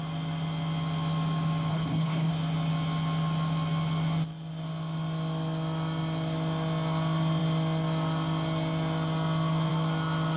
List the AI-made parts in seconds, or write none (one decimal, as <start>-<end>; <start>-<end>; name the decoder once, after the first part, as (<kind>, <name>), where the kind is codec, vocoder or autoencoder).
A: 1.7-2.3 (codec, HILCodec)